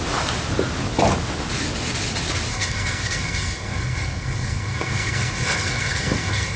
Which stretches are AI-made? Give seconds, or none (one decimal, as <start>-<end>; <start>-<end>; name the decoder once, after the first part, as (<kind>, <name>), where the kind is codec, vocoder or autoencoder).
2.5-6.6 (codec, SNAC)